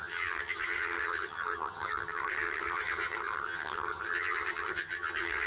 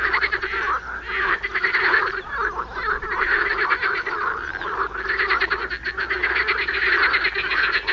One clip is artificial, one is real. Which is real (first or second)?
second